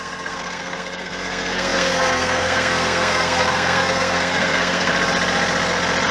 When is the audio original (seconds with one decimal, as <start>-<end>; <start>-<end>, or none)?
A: 4.9-6.1